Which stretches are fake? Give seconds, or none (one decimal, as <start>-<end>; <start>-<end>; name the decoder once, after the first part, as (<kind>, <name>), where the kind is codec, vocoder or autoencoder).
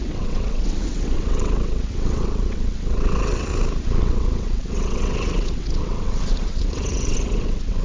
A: 0.0-3.5 (vocoder, WaveNeXt); 4.0-7.8